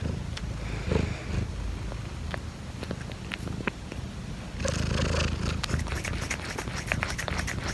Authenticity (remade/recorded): recorded